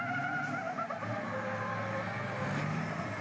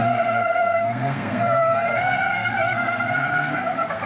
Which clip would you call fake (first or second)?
second